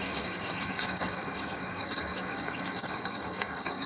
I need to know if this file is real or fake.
fake